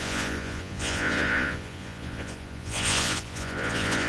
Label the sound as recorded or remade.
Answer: remade